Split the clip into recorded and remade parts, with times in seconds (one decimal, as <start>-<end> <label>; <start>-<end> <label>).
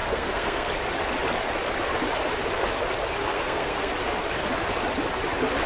0.0-0.7 remade; 0.7-3.3 recorded; 3.3-3.9 remade; 3.9-5.7 recorded